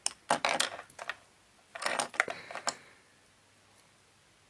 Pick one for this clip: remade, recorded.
recorded